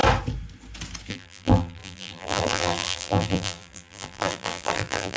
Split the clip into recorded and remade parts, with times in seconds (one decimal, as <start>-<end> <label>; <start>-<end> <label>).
0.0-1.1 recorded; 1.1-5.2 remade

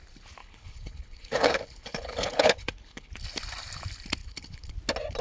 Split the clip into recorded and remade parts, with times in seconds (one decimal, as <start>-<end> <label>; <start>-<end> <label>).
0.0-0.4 recorded; 0.4-3.1 remade; 3.1-4.2 recorded; 4.2-4.7 remade; 4.7-5.2 recorded

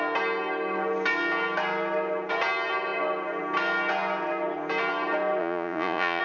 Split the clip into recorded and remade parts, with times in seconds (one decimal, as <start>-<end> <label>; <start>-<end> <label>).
0.0-5.4 recorded; 5.4-6.2 remade

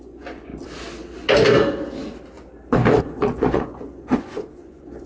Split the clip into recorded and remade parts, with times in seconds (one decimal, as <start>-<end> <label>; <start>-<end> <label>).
0.0-0.5 remade; 0.5-3.0 recorded; 3.0-5.1 remade

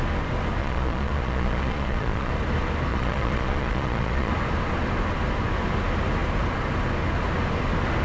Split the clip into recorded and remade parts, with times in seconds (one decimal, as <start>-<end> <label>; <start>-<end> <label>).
0.0-0.6 recorded; 0.6-2.3 remade; 2.3-2.9 recorded; 2.9-4.3 remade; 4.3-8.0 recorded

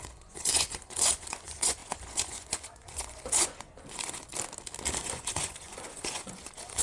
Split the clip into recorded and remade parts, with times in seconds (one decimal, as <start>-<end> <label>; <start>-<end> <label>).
0.0-4.3 remade; 4.3-4.9 recorded; 4.9-6.8 remade